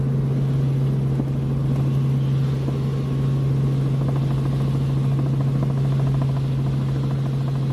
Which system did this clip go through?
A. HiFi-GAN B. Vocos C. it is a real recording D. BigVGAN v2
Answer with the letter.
C